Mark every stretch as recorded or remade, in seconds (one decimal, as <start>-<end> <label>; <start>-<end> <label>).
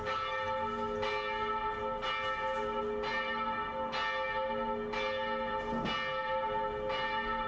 0.0-7.5 recorded